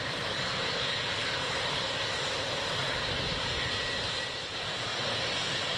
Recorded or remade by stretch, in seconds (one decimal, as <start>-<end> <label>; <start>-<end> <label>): 0.0-4.9 remade; 4.9-5.8 recorded